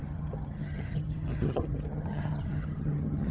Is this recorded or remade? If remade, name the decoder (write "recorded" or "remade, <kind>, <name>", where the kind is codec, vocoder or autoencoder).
remade, vocoder, HiFi-GAN